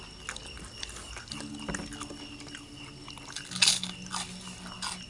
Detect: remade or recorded recorded